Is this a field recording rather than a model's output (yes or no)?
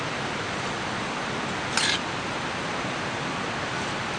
yes